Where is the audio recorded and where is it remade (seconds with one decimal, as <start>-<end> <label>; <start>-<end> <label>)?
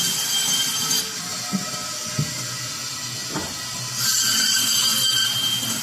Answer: 0.0-1.3 remade; 1.3-4.2 recorded; 4.2-4.9 remade; 4.9-5.8 recorded